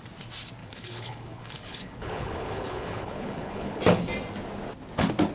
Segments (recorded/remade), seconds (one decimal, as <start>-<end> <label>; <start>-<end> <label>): 0.0-0.6 recorded; 0.6-3.8 remade; 3.8-5.3 recorded